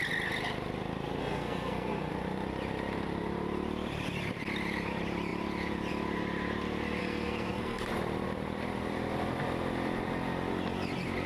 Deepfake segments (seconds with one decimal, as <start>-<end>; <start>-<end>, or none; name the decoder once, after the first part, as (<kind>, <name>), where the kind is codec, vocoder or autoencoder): 1.2-2.1 (codec, SNAC); 7.0-7.9